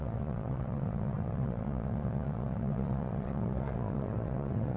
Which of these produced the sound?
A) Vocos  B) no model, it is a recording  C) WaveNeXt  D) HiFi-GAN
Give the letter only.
C